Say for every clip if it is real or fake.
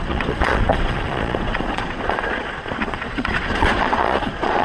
fake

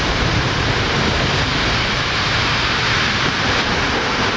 fake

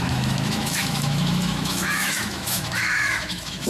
fake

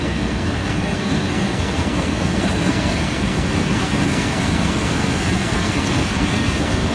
fake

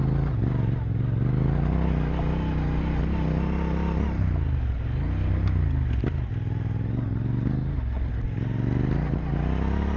real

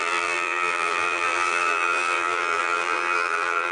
fake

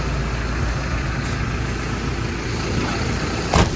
real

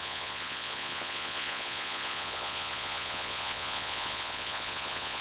fake